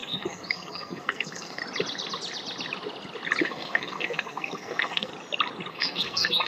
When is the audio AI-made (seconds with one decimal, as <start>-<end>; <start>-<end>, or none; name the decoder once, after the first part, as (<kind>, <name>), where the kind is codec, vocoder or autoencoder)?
0.0-1.6 (codec, SNAC); 3.4-5.1; 5.7-6.5